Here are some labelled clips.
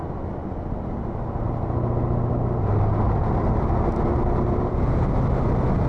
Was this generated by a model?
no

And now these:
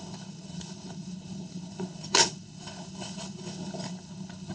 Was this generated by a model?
yes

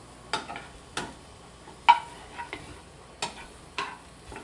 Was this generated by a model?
no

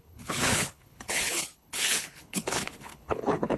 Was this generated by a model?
yes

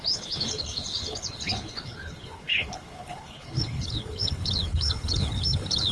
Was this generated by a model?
yes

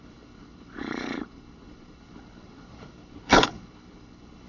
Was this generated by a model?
yes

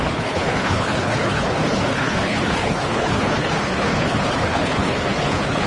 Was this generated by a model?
yes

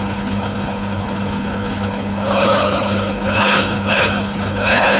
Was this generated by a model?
yes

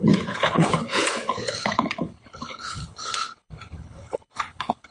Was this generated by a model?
yes